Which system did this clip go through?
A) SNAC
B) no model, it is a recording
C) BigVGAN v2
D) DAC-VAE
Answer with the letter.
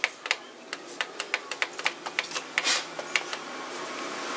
B